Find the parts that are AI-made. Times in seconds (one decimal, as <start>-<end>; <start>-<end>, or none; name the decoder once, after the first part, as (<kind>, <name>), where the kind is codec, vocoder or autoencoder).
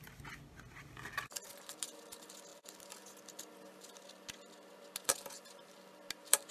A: none